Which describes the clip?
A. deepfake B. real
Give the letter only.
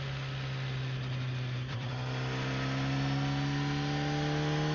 B